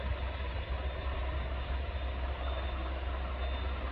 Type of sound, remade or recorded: recorded